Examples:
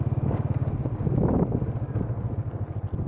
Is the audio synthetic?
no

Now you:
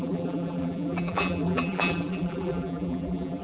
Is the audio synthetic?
yes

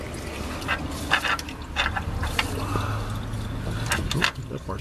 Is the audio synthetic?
no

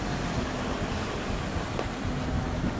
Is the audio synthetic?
no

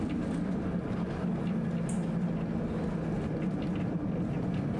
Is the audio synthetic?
no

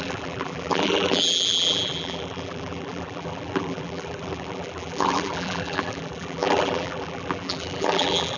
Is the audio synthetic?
yes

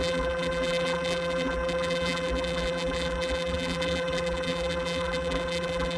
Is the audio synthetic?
yes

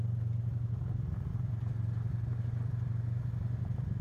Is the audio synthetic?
no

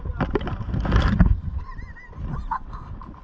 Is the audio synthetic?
no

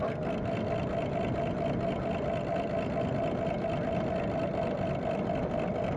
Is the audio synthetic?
no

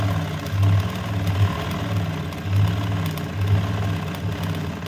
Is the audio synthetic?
no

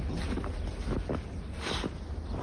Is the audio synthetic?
no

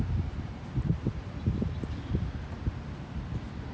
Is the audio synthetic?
no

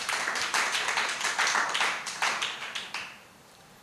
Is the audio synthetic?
yes